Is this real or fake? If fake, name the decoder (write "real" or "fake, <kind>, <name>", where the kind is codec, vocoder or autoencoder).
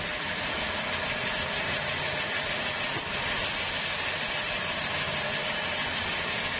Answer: real